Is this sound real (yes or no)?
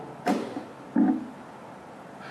yes